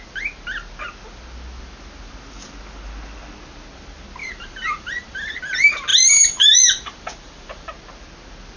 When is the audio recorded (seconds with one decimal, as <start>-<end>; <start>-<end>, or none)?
0.0-4.2; 5.4-5.9; 7.7-8.6

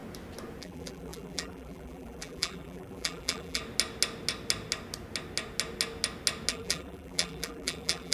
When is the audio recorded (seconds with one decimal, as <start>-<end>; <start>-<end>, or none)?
0.0-0.6; 3.6-6.5

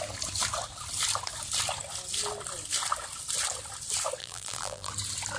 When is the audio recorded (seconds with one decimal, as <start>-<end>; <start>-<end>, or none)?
0.0-4.2; 4.9-5.4

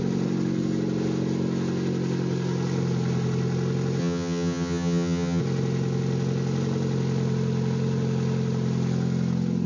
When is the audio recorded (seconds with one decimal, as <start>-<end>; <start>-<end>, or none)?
0.0-4.0; 5.4-9.7

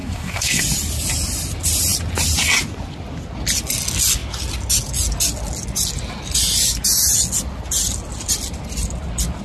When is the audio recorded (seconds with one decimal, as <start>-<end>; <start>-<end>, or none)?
0.6-9.4

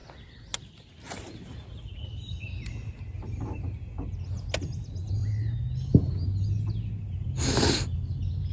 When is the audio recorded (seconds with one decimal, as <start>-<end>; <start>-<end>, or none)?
0.0-8.5

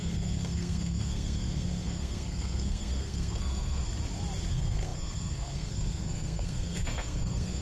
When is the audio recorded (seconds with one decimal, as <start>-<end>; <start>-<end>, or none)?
3.8-4.5

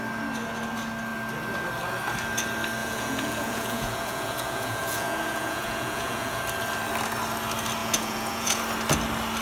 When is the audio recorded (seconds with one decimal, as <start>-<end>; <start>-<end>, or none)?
0.0-2.8; 6.4-7.8; 8.6-9.4